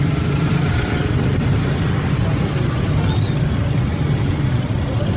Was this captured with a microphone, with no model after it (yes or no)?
yes